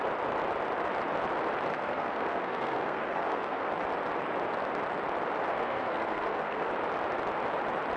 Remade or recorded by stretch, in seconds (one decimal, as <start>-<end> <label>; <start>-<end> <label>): 0.0-1.7 recorded; 1.7-3.7 remade; 3.7-5.5 recorded; 5.5-6.7 remade; 6.7-8.0 recorded